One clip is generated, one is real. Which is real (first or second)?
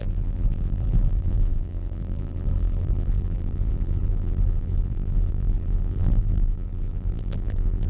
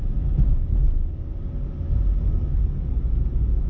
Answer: second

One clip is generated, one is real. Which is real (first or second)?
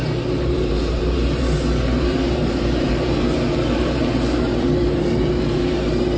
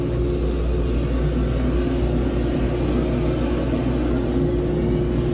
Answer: second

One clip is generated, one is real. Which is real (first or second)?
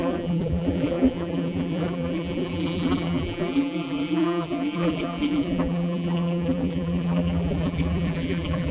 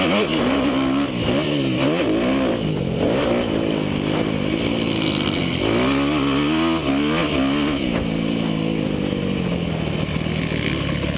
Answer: second